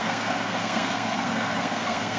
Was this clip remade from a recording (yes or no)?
yes